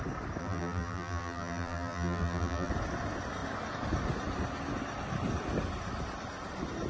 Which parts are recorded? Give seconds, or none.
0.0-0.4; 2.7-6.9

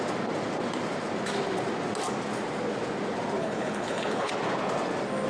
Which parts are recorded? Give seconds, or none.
0.0-3.4; 4.3-5.3

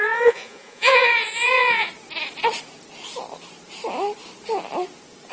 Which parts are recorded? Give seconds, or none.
1.9-5.3

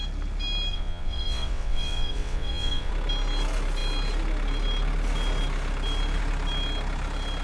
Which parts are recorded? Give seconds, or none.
0.0-0.7; 2.9-7.4